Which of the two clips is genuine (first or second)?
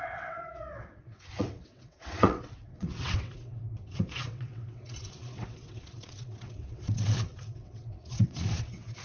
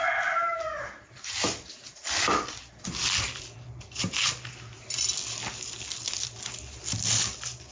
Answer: second